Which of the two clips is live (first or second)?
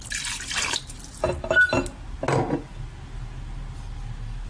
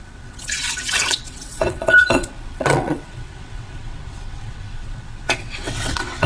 first